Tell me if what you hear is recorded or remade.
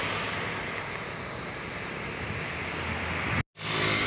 recorded